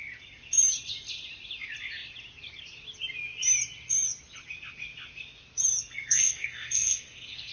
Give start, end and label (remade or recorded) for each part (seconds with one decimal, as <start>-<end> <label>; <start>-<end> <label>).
0.0-6.1 recorded; 6.1-7.5 remade